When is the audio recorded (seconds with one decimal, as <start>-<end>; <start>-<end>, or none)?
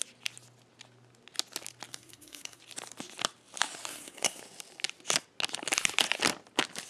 0.0-1.9; 2.6-3.9; 4.4-6.9